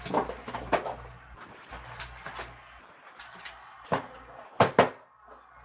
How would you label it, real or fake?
real